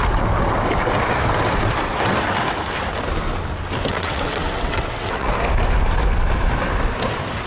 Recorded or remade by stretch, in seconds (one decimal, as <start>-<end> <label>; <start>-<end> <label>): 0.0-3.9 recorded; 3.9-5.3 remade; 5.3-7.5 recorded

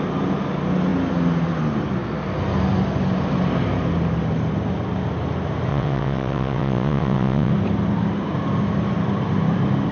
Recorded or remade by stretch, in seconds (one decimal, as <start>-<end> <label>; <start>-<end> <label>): 0.0-5.7 recorded; 5.7-7.5 remade; 7.5-9.9 recorded

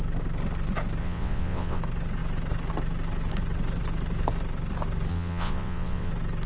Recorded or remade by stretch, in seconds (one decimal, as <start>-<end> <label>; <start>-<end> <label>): 0.0-1.0 recorded; 1.0-1.8 remade; 1.8-5.1 recorded; 5.1-6.1 remade; 6.1-6.5 recorded

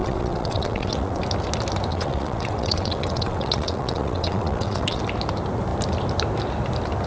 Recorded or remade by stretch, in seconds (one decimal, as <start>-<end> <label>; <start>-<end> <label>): 0.0-1.2 remade; 1.2-1.9 recorded; 1.9-5.0 remade; 5.0-7.1 recorded